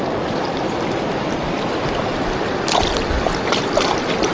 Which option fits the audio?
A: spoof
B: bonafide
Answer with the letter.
B